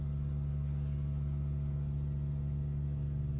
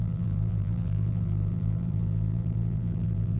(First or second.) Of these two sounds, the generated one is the second